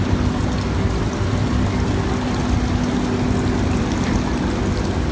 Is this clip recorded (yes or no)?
yes